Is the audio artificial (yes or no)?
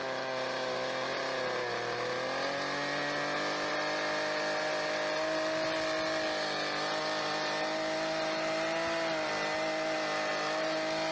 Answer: no